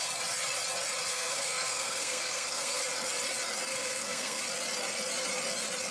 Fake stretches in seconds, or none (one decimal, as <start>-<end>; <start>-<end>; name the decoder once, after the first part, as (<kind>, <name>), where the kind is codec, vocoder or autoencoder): 1.1-2.8 (codec, SNAC); 3.7-4.4